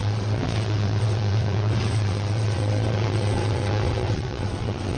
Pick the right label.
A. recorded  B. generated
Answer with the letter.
B